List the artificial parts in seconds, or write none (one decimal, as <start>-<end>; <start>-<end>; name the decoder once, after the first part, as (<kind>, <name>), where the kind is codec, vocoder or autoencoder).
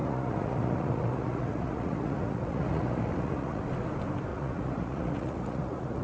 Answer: 0.0-3.6 (vocoder, Vocos); 4.3-6.0